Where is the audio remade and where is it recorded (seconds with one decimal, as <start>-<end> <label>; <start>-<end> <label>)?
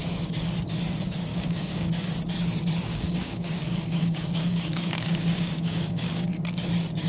0.0-1.3 recorded; 1.3-1.9 remade; 1.9-2.9 recorded; 2.9-6.3 remade; 6.3-7.1 recorded